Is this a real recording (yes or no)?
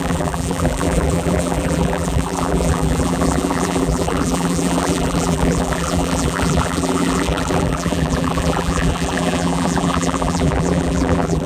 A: no